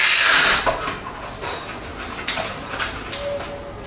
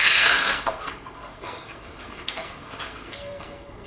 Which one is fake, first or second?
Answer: second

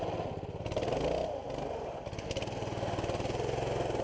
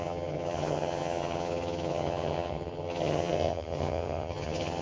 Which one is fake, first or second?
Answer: second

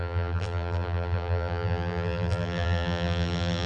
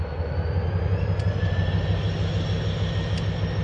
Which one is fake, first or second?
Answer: first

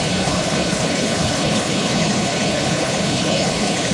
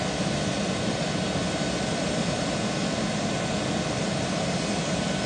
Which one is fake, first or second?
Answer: first